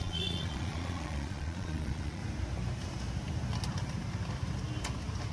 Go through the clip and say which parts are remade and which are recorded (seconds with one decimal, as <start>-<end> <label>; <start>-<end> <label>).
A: 0.0-2.2 remade; 2.2-5.3 recorded